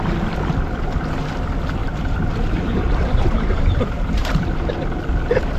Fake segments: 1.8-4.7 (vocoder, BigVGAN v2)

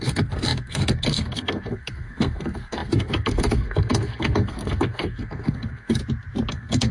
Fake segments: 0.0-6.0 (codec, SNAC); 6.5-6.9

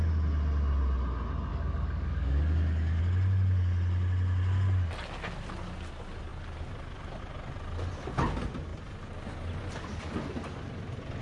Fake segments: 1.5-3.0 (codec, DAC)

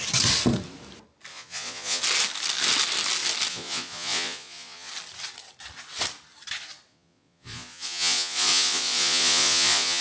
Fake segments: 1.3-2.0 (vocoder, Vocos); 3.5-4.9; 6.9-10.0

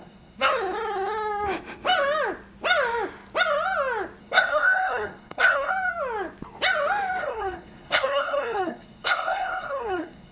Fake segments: 0.0-0.5 (codec, SNAC); 4.2-5.7; 7.2-10.3

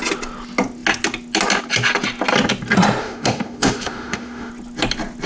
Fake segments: 3.0-4.5 (autoencoder, DAC-VAE)

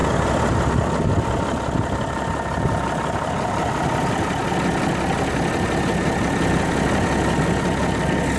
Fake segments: none